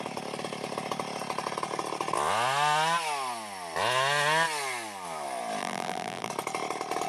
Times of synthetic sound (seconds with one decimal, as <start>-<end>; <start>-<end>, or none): 5.6-6.3